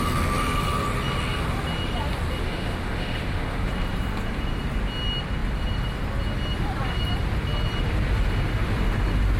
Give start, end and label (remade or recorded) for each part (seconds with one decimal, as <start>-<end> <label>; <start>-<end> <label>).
0.0-2.4 recorded; 2.4-3.7 remade; 3.7-9.4 recorded

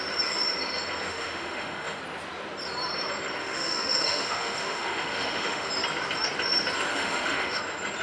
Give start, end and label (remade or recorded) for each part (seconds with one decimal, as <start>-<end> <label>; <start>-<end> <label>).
0.0-1.1 recorded; 1.1-2.0 remade; 2.0-3.4 recorded; 3.4-5.7 remade; 5.7-6.9 recorded; 6.9-7.6 remade; 7.6-8.0 recorded

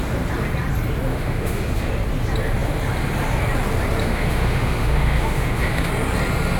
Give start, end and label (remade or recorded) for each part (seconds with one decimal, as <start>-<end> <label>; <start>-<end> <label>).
0.0-1.1 recorded; 1.1-1.9 remade; 1.9-4.0 recorded; 4.0-5.9 remade; 5.9-6.6 recorded

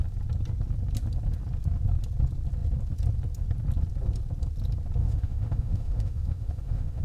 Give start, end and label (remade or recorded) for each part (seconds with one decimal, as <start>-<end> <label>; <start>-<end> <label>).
0.0-5.0 recorded; 5.0-7.0 remade

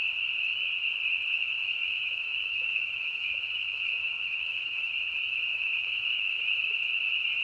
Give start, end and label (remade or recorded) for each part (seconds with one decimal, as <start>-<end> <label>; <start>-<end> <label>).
0.0-1.4 recorded; 1.4-4.9 remade; 4.9-5.5 recorded; 5.5-6.5 remade; 6.5-7.4 recorded

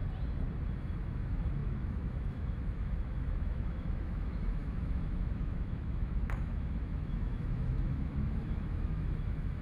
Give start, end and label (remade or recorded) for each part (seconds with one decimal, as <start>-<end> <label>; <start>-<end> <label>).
0.0-0.7 recorded; 0.7-9.6 remade

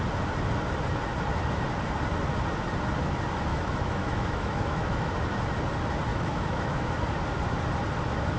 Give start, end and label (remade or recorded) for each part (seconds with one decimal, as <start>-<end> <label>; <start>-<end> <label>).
0.0-3.5 recorded; 3.5-5.1 remade; 5.1-6.1 recorded; 6.1-6.9 remade; 6.9-8.4 recorded